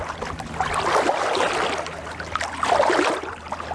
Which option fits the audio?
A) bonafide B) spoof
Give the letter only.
A